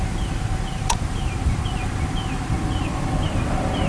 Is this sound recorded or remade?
remade